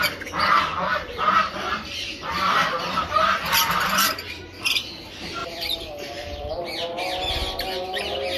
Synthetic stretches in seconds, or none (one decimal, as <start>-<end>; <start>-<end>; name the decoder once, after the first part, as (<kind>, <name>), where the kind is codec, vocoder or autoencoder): 0.9-4.4 (vocoder, BigVGAN v2); 5.4-6.5